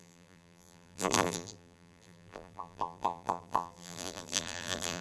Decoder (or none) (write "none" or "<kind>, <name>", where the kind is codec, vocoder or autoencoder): vocoder, BigVGAN v2